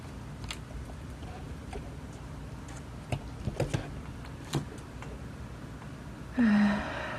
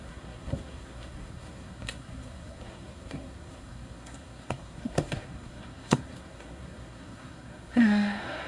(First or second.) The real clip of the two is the first